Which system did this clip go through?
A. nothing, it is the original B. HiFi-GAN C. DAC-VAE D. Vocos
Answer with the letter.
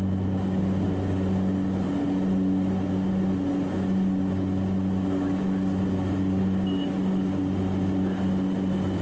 A